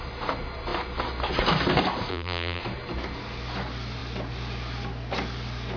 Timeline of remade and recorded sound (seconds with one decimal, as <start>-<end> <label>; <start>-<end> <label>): 0.0-2.1 recorded; 2.1-2.6 remade; 2.6-5.8 recorded